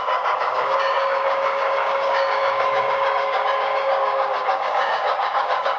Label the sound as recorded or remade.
remade